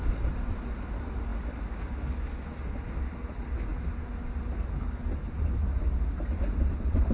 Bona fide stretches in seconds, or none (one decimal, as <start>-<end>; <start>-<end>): 0.0-7.1